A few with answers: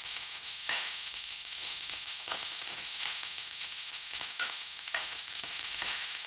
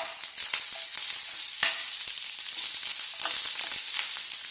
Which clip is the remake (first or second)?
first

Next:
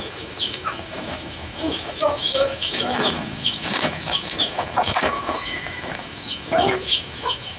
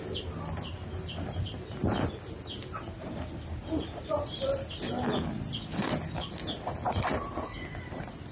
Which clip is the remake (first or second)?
first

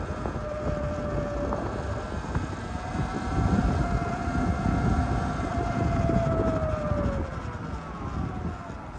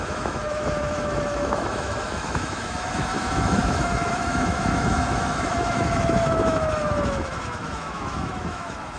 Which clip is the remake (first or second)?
second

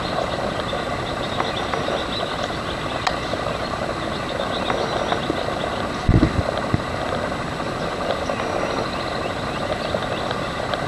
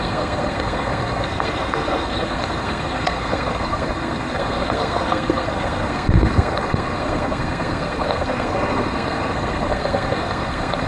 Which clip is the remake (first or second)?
second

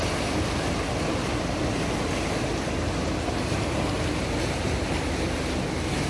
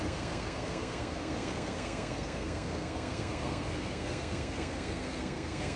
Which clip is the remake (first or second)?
second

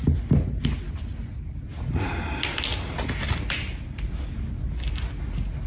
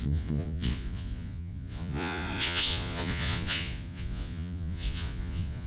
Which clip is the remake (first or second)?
second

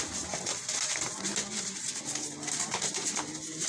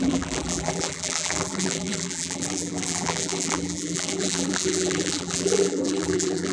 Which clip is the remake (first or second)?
second